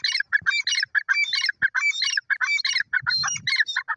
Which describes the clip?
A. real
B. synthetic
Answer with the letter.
A